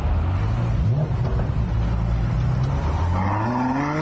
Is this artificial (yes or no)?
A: no